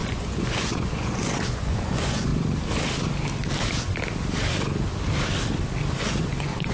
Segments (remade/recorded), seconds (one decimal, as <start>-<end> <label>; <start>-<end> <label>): 0.0-2.3 remade; 2.3-6.0 recorded; 6.0-6.7 remade